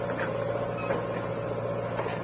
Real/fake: real